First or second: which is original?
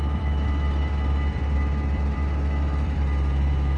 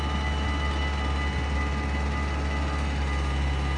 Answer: second